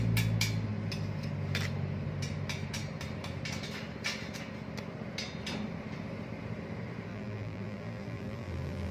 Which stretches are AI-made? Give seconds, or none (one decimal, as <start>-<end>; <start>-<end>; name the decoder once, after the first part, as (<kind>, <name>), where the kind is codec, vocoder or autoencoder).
7.1-8.9 (vocoder, BigVGAN v2)